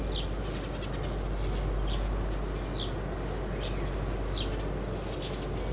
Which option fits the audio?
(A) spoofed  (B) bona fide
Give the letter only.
B